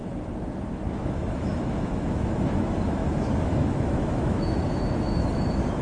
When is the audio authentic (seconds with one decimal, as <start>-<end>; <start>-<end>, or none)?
0.0-0.7